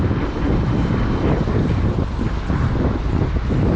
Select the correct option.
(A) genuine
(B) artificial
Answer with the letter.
A